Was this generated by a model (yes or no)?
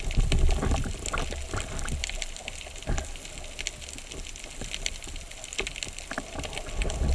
no